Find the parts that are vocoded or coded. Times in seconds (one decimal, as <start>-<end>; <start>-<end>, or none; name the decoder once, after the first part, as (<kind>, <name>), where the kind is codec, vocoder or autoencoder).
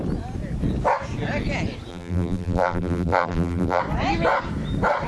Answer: 1.9-3.8 (vocoder, BigVGAN v2)